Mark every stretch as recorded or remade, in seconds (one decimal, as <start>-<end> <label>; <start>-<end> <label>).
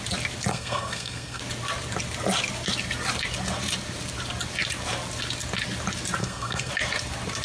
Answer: 0.0-0.5 recorded; 0.5-1.4 remade; 1.4-6.2 recorded; 6.2-6.7 remade; 6.7-7.4 recorded